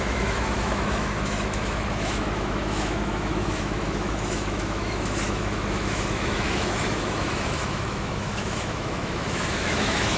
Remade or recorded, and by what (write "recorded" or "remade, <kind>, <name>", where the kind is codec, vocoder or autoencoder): remade, autoencoder, DAC-VAE